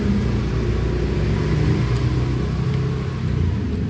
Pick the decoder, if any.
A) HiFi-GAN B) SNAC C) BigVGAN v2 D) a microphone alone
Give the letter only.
D